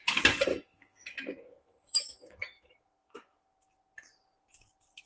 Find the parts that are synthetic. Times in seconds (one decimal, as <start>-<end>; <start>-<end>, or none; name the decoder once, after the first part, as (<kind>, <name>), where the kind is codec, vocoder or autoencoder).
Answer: 0.5-3.5 (autoencoder, DAC-VAE)